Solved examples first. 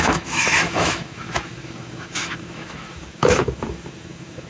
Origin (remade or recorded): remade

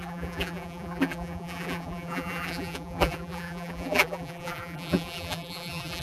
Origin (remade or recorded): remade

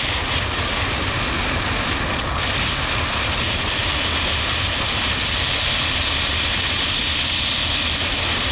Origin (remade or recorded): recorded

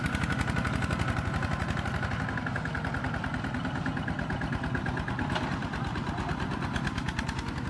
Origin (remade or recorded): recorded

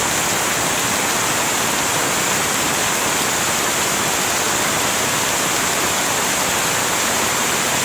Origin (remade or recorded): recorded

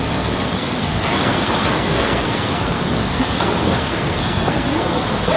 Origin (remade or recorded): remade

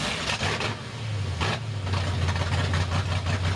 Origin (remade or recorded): recorded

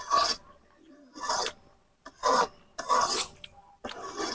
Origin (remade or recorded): recorded